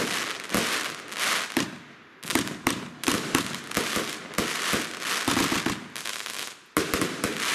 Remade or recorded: recorded